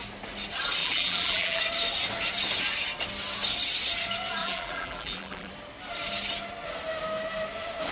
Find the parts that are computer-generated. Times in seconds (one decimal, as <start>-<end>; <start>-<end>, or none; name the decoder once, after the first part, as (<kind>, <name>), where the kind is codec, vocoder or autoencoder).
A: 0.8-1.6 (vocoder, BigVGAN v2); 4.4-5.5